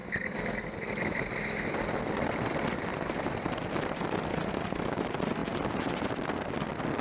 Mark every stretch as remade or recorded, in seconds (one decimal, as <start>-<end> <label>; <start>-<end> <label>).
0.0-7.0 recorded